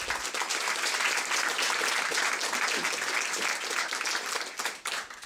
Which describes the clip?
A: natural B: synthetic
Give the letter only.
A